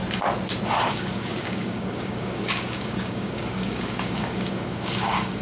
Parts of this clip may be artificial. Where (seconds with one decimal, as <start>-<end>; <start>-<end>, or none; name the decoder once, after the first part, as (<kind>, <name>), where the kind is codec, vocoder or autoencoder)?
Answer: 0.9-5.4 (codec, DAC)